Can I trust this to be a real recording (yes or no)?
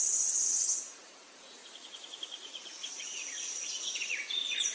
no